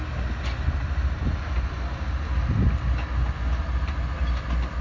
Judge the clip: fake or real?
real